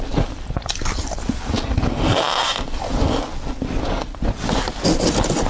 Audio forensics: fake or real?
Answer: real